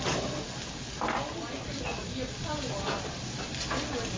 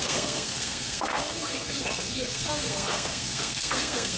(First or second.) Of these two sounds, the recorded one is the first